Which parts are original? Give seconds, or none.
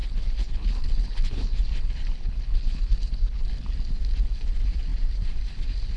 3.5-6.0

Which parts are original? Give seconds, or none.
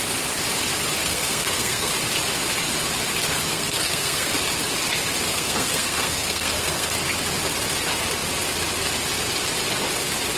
0.0-1.0; 1.9-3.5; 4.3-5.3; 6.9-10.4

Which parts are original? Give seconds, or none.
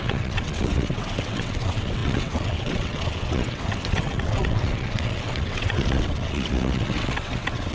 none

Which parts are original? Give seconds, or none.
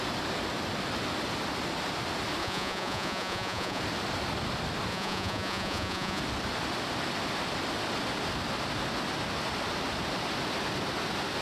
0.0-2.4; 3.8-4.9; 6.2-11.4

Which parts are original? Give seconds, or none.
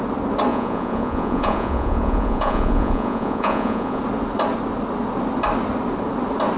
0.0-0.5; 4.0-6.6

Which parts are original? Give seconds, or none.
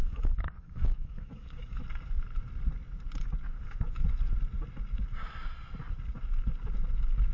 1.8-7.3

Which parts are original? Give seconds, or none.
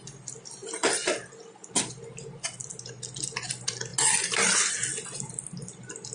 0.0-6.1